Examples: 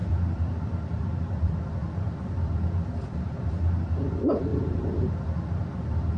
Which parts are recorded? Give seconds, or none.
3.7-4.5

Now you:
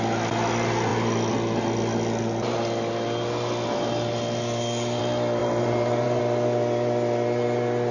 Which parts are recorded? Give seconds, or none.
0.0-5.4; 6.2-7.9

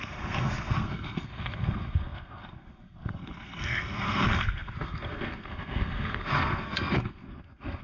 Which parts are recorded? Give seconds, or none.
none

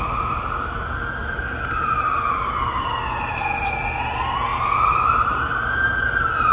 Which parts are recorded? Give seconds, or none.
0.0-6.5

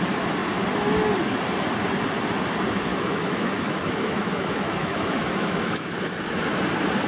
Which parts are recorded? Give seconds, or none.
0.0-2.9; 6.6-7.1

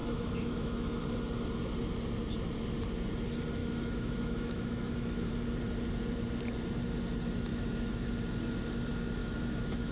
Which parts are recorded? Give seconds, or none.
1.0-3.6; 5.3-7.5; 8.1-9.2

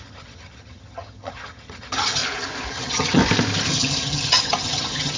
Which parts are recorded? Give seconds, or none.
2.2-2.7; 3.2-3.7